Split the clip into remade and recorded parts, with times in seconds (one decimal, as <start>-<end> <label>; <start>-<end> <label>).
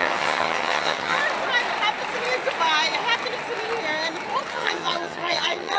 0.0-1.2 remade; 1.2-4.5 recorded; 4.5-5.8 remade